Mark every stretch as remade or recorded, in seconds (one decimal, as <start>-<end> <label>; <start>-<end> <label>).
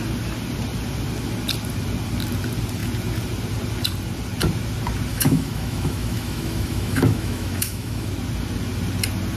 0.0-5.1 recorded; 5.1-8.1 remade; 8.1-9.4 recorded